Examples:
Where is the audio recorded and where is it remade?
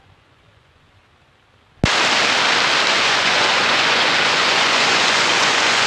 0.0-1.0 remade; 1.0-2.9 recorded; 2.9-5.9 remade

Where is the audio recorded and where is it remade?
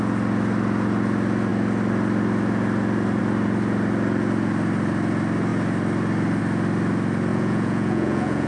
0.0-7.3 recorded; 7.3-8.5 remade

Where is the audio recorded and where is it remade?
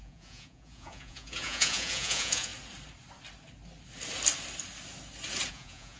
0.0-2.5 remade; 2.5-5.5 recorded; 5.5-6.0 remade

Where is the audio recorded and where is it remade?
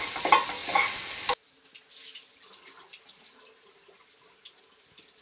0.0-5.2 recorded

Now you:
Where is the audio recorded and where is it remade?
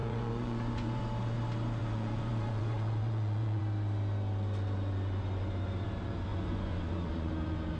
0.0-1.0 remade; 1.0-1.8 recorded; 1.8-3.6 remade; 3.6-6.3 recorded; 6.3-7.3 remade; 7.3-7.8 recorded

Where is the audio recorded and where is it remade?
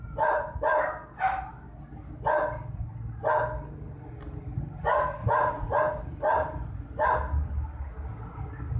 0.0-5.2 recorded; 5.2-5.8 remade; 5.8-8.8 recorded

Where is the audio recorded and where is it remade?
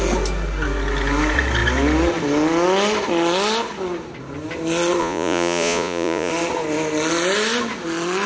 0.0-5.0 recorded; 5.0-6.3 remade; 6.3-8.3 recorded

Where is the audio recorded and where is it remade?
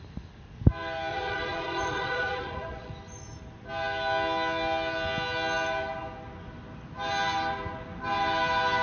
0.0-1.1 recorded; 1.1-2.9 remade; 2.9-8.8 recorded